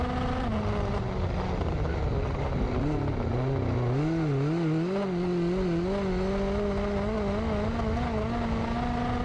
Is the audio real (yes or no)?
yes